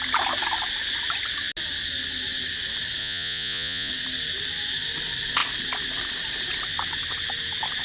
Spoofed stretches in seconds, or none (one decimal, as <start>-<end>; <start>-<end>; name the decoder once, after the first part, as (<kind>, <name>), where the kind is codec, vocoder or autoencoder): 3.0-3.9 (vocoder, Vocos)